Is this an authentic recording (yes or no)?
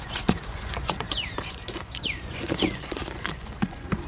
no